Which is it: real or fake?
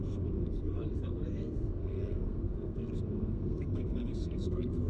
fake